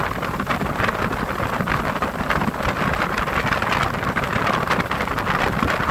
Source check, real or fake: real